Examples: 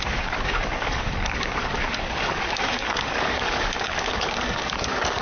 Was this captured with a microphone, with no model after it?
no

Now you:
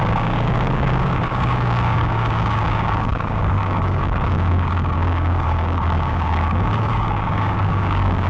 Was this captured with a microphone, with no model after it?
no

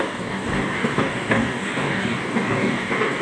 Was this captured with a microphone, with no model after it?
no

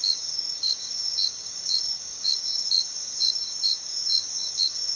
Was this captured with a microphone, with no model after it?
no